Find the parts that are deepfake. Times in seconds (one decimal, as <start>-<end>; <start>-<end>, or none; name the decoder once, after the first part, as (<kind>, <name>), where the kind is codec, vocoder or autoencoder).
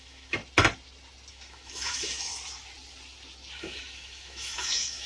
0.0-0.4 (autoencoder, DAC-VAE); 1.3-2.3; 3.6-5.1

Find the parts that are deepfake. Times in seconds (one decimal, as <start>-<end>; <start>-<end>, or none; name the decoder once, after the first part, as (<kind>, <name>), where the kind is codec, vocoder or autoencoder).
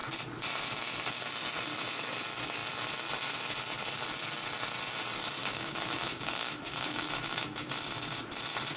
5.4-7.7 (autoencoder, DAC-VAE)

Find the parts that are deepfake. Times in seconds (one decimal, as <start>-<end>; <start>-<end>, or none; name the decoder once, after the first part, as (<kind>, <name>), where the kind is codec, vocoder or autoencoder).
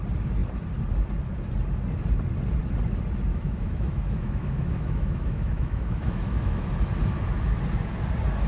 3.3-6.7 (autoencoder, DAC-VAE)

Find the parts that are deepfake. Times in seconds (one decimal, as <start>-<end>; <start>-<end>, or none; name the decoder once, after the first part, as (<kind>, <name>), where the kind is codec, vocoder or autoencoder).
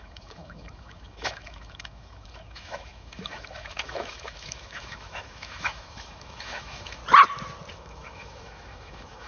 0.0-7.0 (autoencoder, DAC-VAE); 7.7-9.3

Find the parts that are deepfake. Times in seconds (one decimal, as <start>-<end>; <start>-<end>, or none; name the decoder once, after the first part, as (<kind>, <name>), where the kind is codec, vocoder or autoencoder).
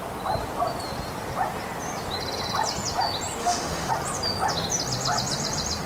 3.4-3.9 (autoencoder, DAC-VAE)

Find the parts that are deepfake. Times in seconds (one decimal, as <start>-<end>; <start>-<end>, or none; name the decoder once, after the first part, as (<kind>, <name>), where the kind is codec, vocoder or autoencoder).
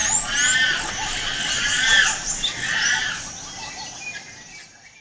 none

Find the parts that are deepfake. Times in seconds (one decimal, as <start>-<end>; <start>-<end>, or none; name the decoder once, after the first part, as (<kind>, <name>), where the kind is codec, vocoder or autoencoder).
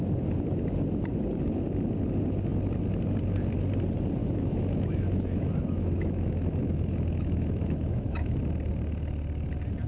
4.2-8.4 (autoencoder, DAC-VAE)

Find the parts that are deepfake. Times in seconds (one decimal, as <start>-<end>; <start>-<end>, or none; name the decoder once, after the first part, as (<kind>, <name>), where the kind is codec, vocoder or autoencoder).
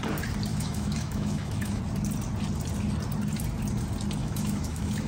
0.5-1.8 (autoencoder, DAC-VAE); 4.2-5.1